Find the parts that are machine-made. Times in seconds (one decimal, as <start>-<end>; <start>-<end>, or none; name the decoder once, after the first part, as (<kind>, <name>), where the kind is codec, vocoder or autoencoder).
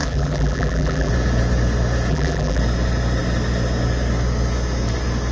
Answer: 0.0-1.1 (vocoder, BigVGAN v2); 2.1-2.6